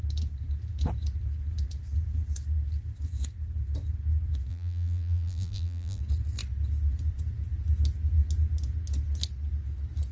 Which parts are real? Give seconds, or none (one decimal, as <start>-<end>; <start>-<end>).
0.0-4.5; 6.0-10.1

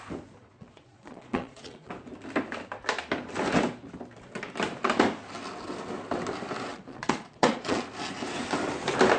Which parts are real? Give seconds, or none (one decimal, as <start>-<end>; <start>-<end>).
0.0-0.4; 1.9-6.7; 7.8-9.2

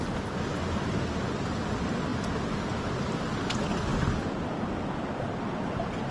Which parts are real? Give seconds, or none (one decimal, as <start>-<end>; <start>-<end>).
0.0-6.1